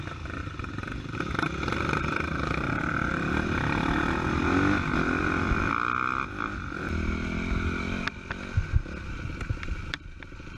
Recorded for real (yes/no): yes